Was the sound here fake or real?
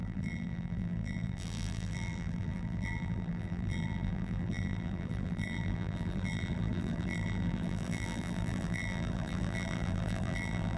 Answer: fake